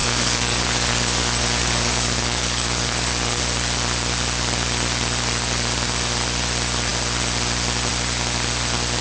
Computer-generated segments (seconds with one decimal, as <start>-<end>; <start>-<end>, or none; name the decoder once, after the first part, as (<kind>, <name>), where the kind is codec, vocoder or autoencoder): 0.0-3.4 (codec, DAC)